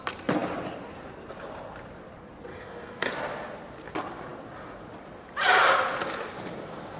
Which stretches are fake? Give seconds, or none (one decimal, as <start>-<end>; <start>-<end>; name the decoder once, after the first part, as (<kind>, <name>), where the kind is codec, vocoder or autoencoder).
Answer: 2.5-3.1 (codec, DAC)